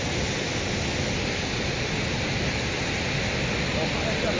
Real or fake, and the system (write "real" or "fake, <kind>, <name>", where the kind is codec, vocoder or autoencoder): real